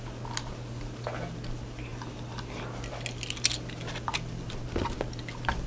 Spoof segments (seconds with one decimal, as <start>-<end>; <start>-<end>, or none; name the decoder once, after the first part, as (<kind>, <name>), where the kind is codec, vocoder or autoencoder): none